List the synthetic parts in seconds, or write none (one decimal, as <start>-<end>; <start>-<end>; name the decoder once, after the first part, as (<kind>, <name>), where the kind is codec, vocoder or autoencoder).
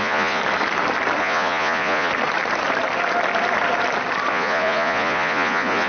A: 0.0-0.4 (vocoder, Vocos); 1.2-2.1; 4.3-5.9